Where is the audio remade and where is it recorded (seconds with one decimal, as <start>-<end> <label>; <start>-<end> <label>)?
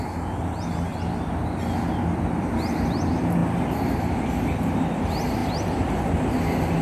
0.0-0.9 recorded; 0.9-2.5 remade; 2.5-5.4 recorded; 5.4-6.1 remade; 6.1-6.8 recorded